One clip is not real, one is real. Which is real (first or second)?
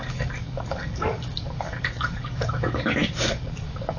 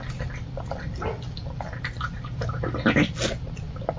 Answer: second